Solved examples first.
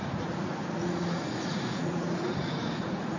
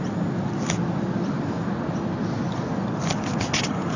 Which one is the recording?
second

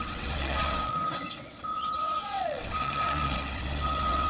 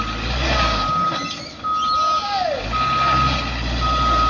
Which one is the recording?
second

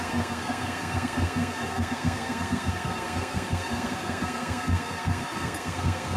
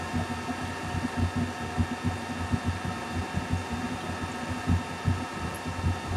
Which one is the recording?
second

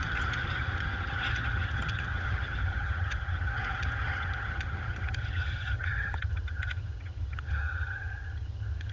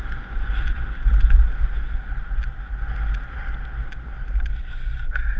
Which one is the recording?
second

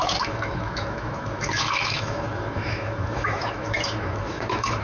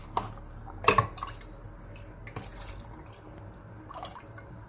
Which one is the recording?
second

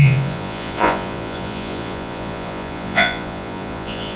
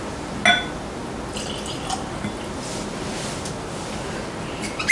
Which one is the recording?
second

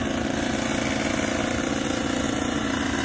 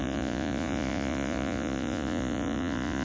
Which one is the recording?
first